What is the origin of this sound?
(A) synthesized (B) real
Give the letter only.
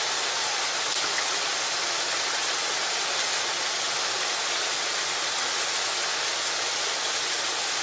B